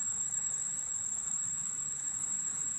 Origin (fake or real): fake